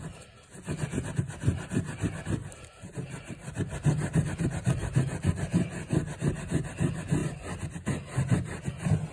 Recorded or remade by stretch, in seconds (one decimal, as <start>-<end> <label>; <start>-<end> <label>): 0.0-9.1 recorded